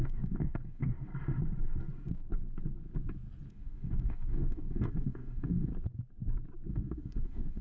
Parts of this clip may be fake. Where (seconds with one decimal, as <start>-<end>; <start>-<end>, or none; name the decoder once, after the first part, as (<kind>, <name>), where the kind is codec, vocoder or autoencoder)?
0.0-1.1 (codec, DAC); 3.5-5.7; 6.7-7.6